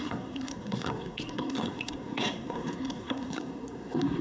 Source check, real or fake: fake